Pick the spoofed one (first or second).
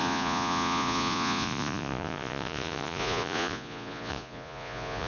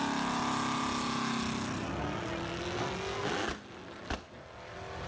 first